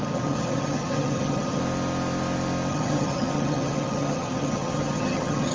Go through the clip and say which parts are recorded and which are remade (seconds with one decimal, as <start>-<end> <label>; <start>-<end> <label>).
0.0-1.6 remade; 1.6-2.7 recorded; 2.7-5.5 remade